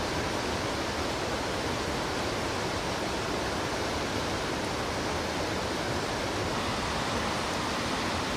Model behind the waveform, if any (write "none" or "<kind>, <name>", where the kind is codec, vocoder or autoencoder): none